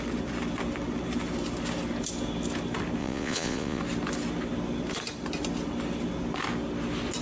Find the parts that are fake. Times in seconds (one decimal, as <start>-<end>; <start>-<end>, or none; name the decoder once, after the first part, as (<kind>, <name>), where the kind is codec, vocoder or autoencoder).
3.0-3.8 (vocoder, Vocos)